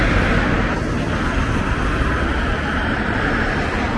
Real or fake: real